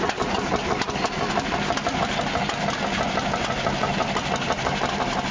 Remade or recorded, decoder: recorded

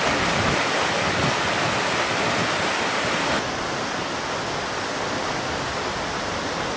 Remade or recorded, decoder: recorded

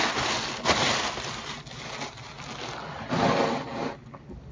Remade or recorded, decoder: recorded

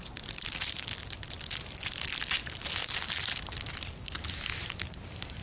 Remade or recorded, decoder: recorded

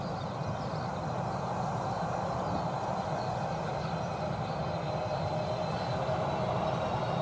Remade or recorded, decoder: recorded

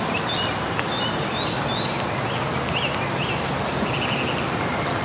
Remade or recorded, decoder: recorded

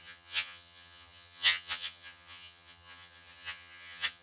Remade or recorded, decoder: remade, vocoder, HiFi-GAN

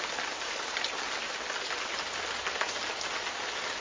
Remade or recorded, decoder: recorded